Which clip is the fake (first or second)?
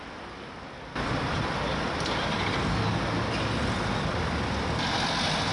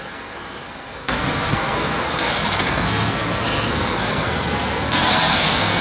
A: second